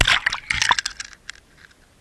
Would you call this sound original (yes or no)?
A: yes